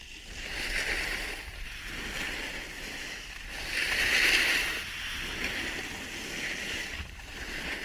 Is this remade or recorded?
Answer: recorded